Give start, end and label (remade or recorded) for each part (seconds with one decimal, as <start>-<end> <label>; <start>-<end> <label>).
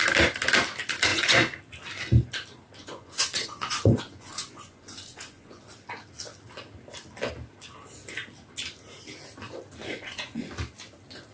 0.0-1.1 recorded; 1.1-1.6 remade; 1.6-2.8 recorded; 2.8-5.6 remade; 5.6-9.8 recorded; 9.8-10.5 remade; 10.5-11.3 recorded